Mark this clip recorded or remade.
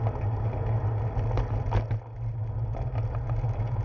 recorded